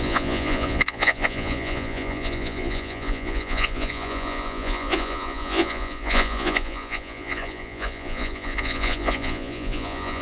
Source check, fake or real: fake